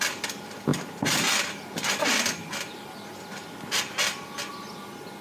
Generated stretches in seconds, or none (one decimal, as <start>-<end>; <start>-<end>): none